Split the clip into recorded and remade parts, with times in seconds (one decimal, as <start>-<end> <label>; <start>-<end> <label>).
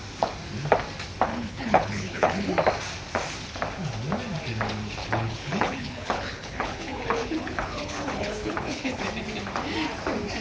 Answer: 0.0-1.3 recorded; 1.3-2.5 remade; 2.5-5.0 recorded; 5.0-9.1 remade; 9.1-10.4 recorded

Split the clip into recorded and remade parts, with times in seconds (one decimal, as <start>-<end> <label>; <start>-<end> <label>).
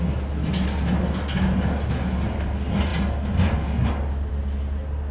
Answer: 0.0-5.1 recorded